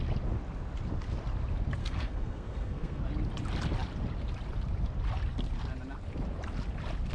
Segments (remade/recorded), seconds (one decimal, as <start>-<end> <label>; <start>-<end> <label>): 0.0-1.8 recorded; 1.8-3.0 remade; 3.0-7.1 recorded